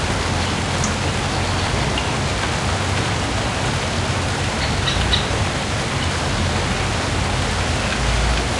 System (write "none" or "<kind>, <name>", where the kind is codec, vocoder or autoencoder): none